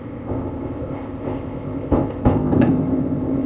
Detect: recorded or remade remade